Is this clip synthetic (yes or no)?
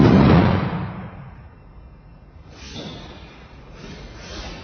yes